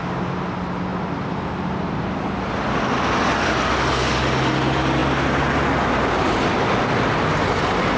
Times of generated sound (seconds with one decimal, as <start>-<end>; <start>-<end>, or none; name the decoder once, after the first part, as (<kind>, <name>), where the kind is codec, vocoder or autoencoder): none